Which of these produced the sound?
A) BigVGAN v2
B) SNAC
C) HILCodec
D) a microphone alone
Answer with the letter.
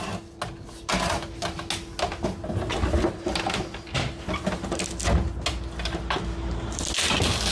D